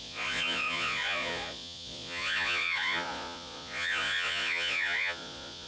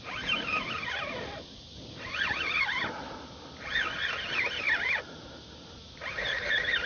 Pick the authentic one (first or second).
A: second